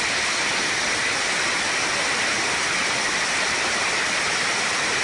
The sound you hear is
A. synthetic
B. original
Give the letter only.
B